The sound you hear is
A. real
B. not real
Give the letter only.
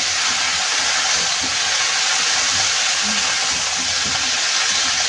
A